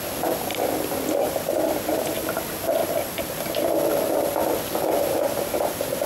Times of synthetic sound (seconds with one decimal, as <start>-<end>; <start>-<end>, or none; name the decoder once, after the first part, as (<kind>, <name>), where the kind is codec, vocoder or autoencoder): 0.5-1.8 (vocoder, BigVGAN v2); 2.8-3.7